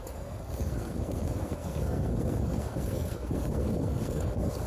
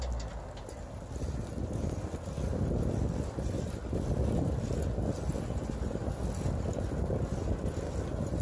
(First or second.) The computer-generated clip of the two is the first